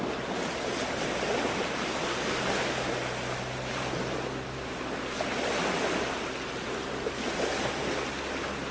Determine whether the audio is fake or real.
real